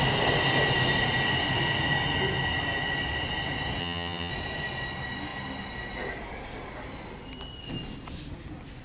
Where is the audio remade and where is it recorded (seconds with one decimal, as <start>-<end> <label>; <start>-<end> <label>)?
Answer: 0.0-3.8 recorded; 3.8-4.3 remade; 4.3-8.8 recorded